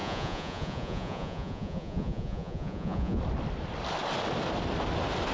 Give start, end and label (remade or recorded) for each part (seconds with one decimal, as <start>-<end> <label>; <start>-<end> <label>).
0.0-3.2 remade; 3.2-5.3 recorded